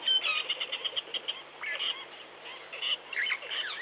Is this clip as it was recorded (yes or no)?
yes